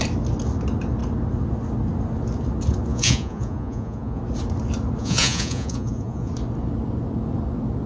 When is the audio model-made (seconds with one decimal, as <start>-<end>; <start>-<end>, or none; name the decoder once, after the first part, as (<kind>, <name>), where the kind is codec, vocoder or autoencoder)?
2.9-4.2 (vocoder, Vocos); 5.0-6.3